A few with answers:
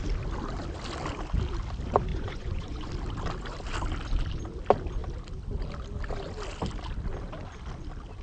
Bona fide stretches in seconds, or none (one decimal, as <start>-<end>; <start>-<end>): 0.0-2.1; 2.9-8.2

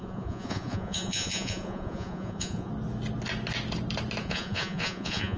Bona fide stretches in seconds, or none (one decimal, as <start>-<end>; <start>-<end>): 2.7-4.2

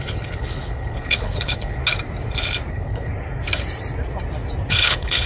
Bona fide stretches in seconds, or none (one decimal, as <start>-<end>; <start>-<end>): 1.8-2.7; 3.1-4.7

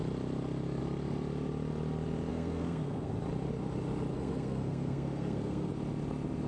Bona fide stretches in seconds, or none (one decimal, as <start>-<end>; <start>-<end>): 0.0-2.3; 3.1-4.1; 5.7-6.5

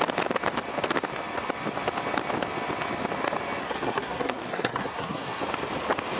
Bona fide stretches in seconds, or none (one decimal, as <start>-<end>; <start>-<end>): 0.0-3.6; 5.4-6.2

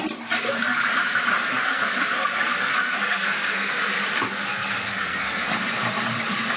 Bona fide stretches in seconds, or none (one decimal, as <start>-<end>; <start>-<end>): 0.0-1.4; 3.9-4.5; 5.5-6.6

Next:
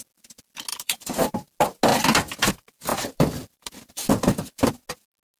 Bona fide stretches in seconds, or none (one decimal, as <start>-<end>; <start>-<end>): 0.0-0.7; 1.3-2.9; 4.7-5.4